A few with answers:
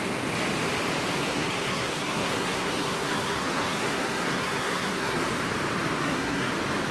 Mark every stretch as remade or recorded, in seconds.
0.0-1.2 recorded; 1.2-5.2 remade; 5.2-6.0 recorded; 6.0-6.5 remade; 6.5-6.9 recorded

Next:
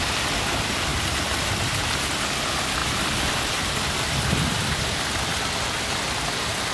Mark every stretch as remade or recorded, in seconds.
0.0-0.9 recorded; 0.9-1.8 remade; 1.8-2.8 recorded; 2.8-5.4 remade; 5.4-6.7 recorded

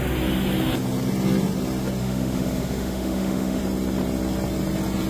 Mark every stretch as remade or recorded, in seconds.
0.0-2.0 recorded; 2.0-3.6 remade; 3.6-5.1 recorded

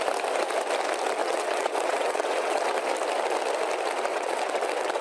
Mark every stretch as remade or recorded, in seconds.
0.0-1.2 recorded; 1.2-2.6 remade; 2.6-4.1 recorded; 4.1-5.0 remade

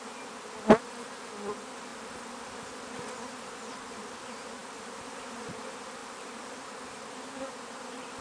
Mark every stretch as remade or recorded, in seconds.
0.0-1.9 recorded; 1.9-2.6 remade; 2.6-8.2 recorded

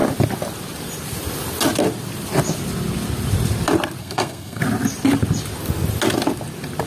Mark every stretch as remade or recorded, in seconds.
0.0-4.0 recorded; 4.0-4.6 remade; 4.6-6.9 recorded